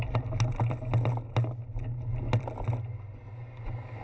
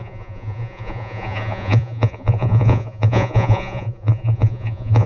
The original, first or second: first